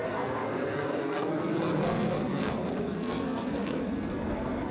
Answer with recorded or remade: remade